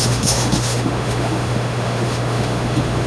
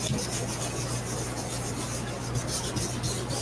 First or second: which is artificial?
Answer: first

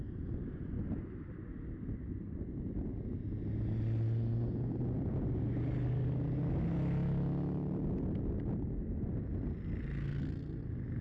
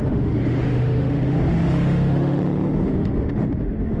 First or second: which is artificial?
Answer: second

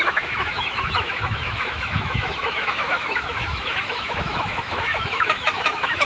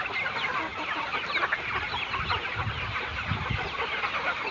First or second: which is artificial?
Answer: first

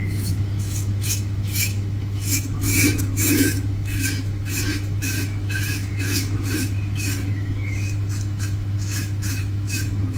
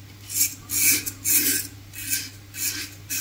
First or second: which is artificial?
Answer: first